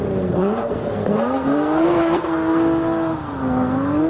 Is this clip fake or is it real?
fake